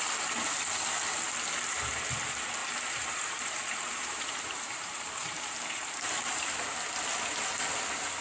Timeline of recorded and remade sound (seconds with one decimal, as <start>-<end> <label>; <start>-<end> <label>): 0.0-2.6 recorded; 2.6-6.6 remade; 6.6-8.2 recorded